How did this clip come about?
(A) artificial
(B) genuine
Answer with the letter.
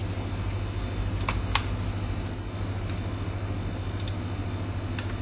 B